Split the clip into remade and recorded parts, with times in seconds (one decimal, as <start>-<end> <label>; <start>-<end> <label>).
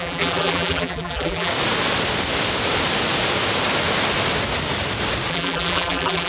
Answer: 0.0-1.5 remade; 1.5-5.3 recorded; 5.3-6.3 remade